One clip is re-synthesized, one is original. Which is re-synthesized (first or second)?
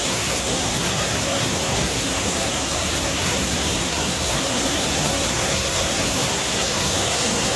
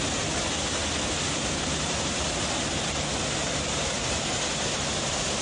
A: first